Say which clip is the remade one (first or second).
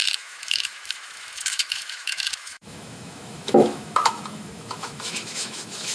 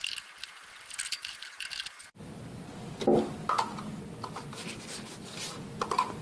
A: first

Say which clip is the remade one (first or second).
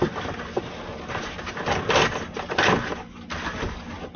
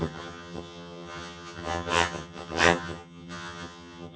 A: second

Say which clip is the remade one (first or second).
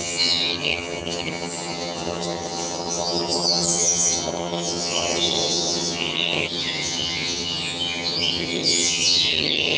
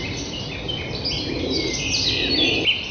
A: first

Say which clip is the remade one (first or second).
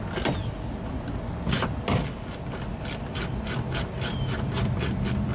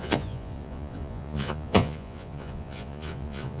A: second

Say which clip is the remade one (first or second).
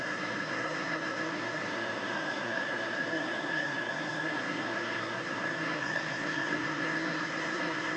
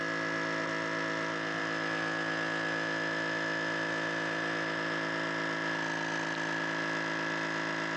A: first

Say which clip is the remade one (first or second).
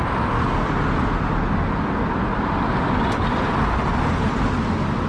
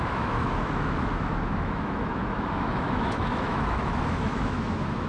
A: second